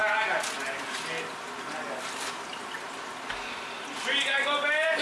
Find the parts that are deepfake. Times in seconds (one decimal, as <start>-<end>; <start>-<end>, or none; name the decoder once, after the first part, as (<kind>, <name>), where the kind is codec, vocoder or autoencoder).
none